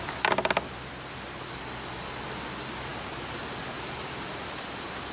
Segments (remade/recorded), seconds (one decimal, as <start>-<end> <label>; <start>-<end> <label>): 0.0-5.1 recorded